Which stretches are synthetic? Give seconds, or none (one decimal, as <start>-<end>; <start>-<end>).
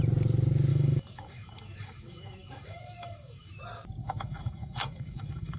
0.7-3.5; 4.0-5.6